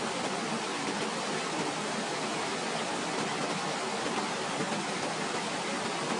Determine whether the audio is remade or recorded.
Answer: recorded